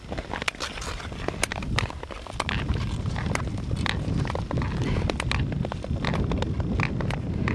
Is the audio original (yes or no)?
yes